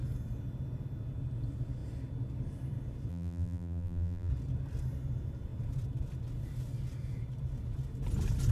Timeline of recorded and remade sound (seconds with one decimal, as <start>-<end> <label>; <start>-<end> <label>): 0.0-3.1 recorded; 3.1-4.3 remade; 4.3-8.5 recorded